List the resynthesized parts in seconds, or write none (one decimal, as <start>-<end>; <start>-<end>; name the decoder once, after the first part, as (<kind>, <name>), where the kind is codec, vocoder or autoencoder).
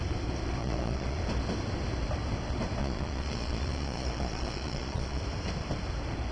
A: 0.6-1.2 (vocoder, Vocos); 2.8-5.2